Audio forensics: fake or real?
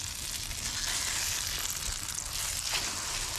real